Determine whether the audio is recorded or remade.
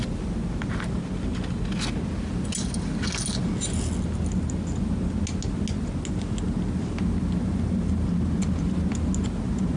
recorded